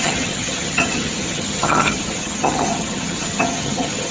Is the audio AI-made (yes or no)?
yes